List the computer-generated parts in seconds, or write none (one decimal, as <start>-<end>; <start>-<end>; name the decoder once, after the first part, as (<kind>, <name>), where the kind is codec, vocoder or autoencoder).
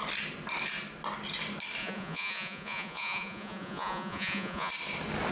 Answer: 1.8-4.7 (vocoder, Vocos)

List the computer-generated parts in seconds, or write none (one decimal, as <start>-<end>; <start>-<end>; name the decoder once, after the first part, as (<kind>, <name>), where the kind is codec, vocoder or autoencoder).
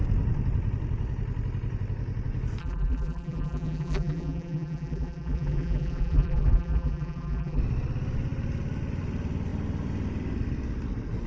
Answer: 2.6-7.6 (vocoder, BigVGAN v2)